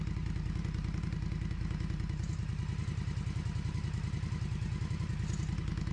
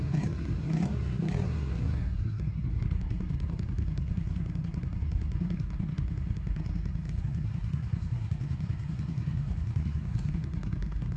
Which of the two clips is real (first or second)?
first